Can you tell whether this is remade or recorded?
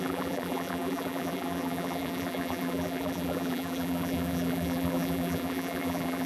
remade